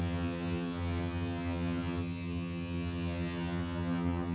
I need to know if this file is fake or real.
fake